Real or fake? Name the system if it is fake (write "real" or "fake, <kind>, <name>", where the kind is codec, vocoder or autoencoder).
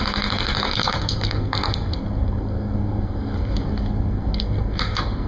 fake, codec, SNAC